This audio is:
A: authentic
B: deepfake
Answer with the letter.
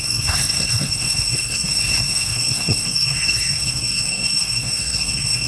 B